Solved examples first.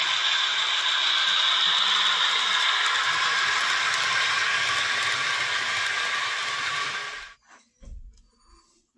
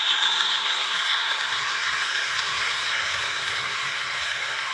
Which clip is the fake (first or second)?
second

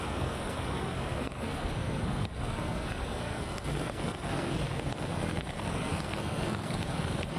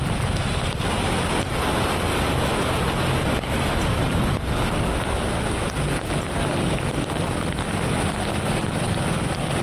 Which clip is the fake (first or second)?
first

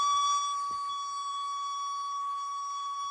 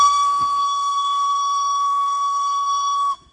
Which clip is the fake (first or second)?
second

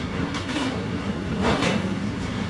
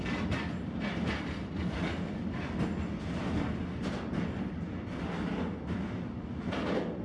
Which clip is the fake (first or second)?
first